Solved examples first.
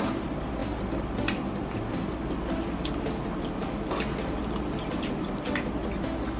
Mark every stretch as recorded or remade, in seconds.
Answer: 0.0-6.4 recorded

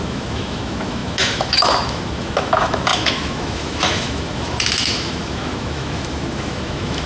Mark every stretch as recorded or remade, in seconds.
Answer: 0.0-7.1 remade

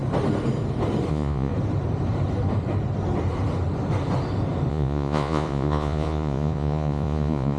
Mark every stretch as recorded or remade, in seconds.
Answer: 0.0-1.1 recorded; 1.1-1.5 remade; 1.5-4.7 recorded; 4.7-7.6 remade